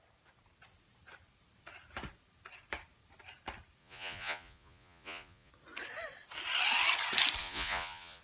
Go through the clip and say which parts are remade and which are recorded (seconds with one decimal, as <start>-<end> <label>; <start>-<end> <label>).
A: 0.0-3.8 recorded; 3.8-5.5 remade; 5.5-7.4 recorded; 7.4-8.2 remade